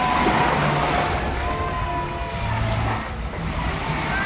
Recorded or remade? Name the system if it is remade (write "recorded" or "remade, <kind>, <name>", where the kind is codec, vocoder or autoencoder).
recorded